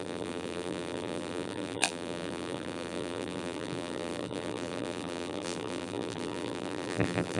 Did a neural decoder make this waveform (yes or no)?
yes